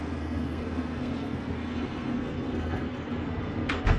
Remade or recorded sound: remade